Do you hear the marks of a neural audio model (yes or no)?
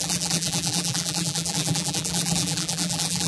yes